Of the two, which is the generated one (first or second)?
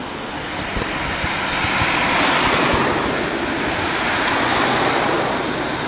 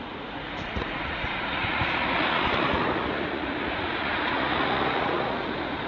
second